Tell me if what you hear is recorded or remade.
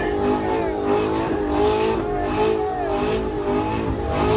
recorded